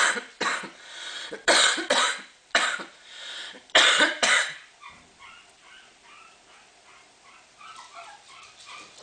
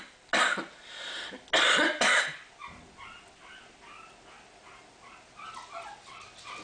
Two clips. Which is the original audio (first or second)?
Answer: second